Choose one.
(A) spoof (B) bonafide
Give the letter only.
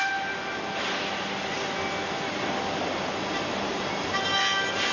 B